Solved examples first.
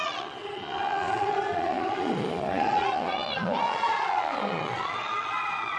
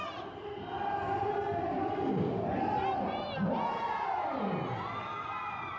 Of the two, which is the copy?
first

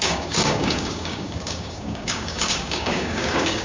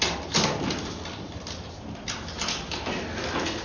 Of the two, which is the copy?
first